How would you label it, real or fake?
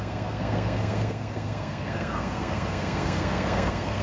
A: fake